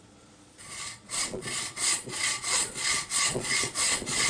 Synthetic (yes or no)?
yes